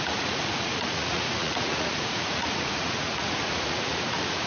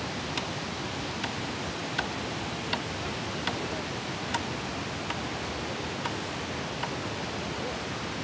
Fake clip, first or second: first